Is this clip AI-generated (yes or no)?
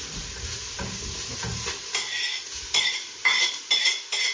no